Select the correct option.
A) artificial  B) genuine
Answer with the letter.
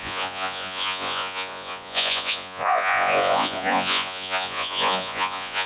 A